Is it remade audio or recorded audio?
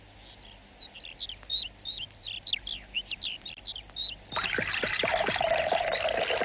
recorded